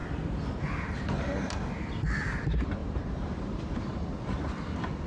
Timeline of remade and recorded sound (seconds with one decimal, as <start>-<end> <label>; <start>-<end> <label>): 0.0-2.8 recorded; 2.8-3.6 remade; 3.6-5.1 recorded